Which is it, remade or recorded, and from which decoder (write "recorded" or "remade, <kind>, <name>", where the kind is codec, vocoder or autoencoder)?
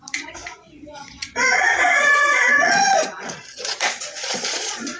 remade, vocoder, Vocos